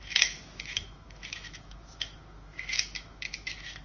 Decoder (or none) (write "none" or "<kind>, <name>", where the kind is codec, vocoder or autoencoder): autoencoder, DAC-VAE